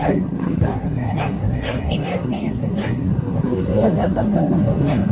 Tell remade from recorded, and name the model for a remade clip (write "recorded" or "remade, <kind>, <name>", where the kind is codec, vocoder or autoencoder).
remade, codec, SNAC